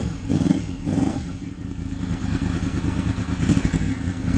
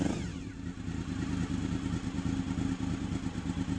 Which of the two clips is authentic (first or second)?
second